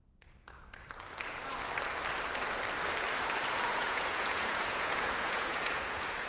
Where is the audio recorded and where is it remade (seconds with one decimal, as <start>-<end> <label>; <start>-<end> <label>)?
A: 0.0-3.8 recorded; 3.8-6.3 remade